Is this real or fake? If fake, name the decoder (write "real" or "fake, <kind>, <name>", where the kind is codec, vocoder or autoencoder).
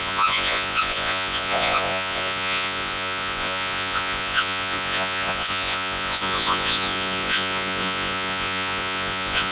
fake, vocoder, Vocos